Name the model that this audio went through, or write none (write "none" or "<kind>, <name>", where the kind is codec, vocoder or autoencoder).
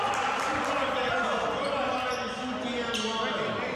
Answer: none